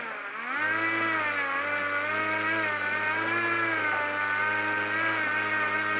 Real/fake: real